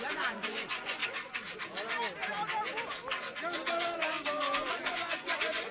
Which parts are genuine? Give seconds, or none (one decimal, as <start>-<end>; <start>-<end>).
1.0-4.4